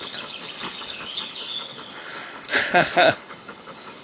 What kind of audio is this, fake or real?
fake